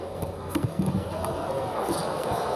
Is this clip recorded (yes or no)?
no